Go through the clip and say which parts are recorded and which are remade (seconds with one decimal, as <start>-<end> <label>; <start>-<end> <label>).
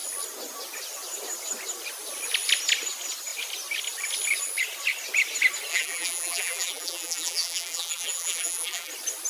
0.0-5.7 recorded; 5.7-8.9 remade; 8.9-9.3 recorded